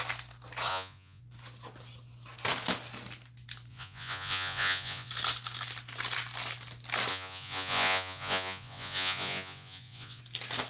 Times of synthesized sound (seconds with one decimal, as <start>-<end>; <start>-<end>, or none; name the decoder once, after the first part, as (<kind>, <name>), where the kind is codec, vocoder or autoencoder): 0.7-1.2 (vocoder, Vocos); 3.7-5.1; 7.1-10.2